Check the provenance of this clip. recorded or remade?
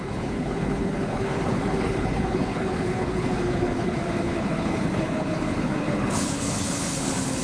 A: remade